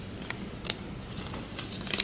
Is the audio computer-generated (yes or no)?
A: no